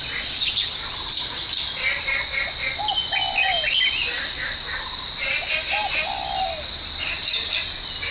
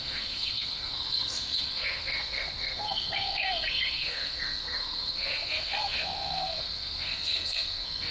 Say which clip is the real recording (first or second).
first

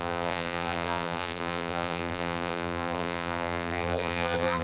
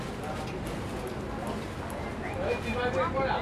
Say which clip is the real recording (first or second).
second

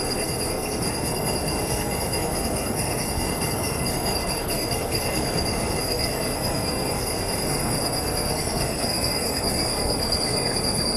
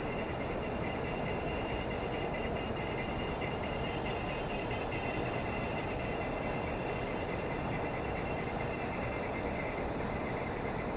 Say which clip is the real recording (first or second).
second